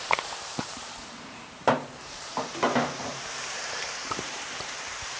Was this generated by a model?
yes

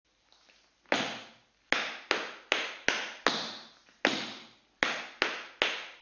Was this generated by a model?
no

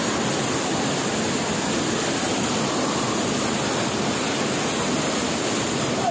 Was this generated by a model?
no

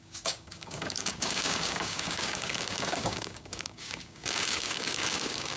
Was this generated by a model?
yes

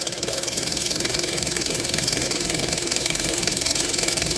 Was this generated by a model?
yes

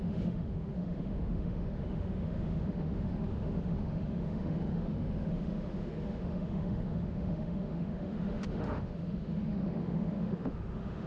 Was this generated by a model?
yes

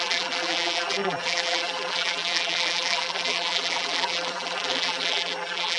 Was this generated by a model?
yes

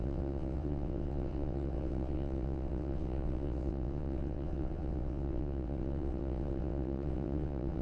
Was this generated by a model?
yes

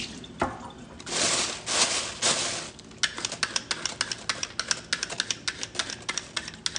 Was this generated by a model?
no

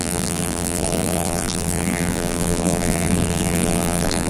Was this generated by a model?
yes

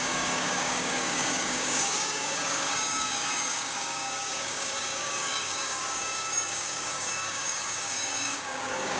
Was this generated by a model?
yes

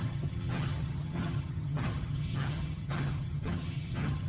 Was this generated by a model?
yes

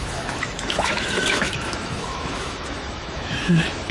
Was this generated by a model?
yes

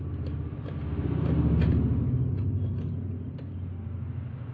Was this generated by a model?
no